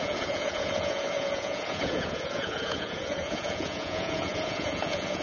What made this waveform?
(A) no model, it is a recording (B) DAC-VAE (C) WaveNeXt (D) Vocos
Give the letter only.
D